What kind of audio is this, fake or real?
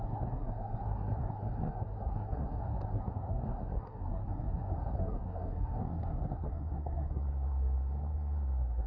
fake